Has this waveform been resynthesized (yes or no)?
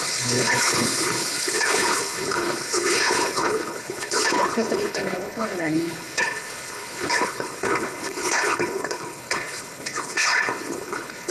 yes